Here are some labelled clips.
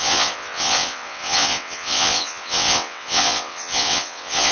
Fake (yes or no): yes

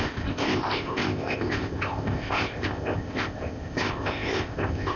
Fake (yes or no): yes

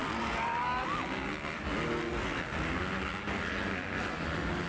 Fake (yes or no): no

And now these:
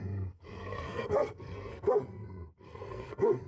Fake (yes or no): yes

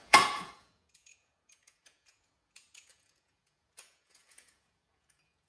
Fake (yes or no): yes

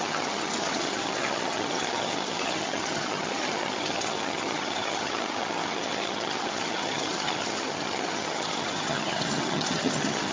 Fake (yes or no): yes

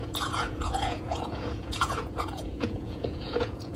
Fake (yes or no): yes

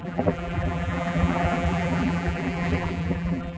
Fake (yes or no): yes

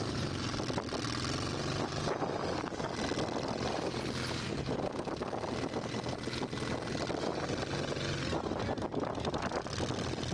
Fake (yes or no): no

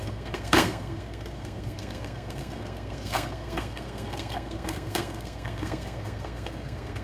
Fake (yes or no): yes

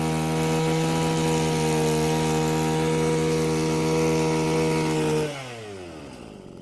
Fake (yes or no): no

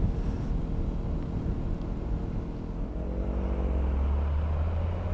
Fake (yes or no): no